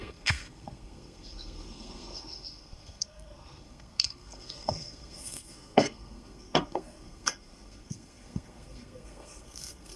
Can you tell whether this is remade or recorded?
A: remade